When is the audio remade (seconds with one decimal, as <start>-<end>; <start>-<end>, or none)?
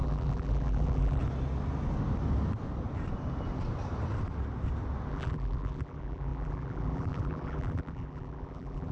0.0-1.2; 5.1-8.9